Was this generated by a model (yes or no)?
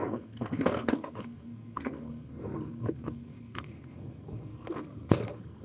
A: yes